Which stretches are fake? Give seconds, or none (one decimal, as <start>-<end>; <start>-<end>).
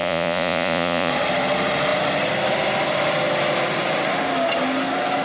0.0-1.1